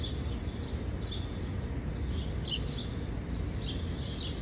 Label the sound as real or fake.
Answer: real